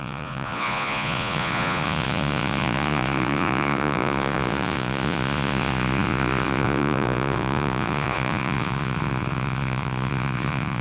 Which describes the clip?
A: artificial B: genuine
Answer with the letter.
A